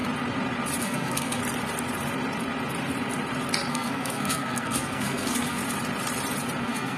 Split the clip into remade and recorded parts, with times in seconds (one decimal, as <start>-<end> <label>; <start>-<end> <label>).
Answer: 0.0-0.8 recorded; 0.8-1.4 remade; 1.4-3.7 recorded; 3.7-5.6 remade; 5.6-6.6 recorded; 6.6-7.0 remade